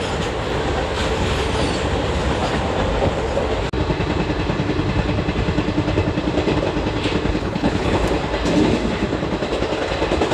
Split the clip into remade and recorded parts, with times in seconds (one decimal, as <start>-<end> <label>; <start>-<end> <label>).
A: 0.0-7.4 recorded; 7.4-8.0 remade; 8.0-10.3 recorded